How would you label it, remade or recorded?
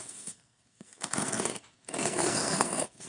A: remade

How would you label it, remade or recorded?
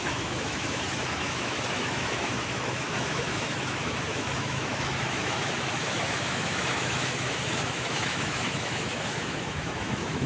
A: remade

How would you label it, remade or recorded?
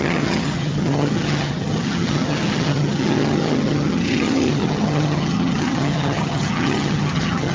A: remade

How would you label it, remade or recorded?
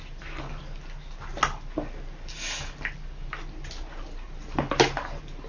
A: recorded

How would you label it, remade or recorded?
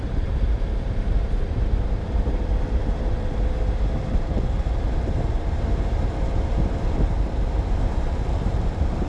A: remade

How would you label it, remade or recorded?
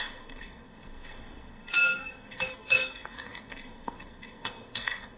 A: remade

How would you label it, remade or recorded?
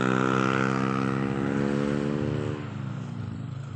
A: recorded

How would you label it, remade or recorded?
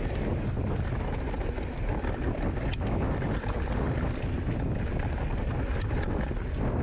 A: recorded